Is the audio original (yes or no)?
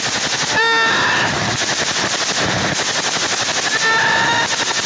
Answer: yes